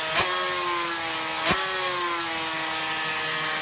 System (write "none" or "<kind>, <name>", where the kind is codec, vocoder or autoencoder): none